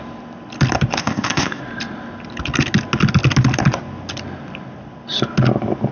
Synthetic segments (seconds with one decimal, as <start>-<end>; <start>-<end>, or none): 1.0-1.6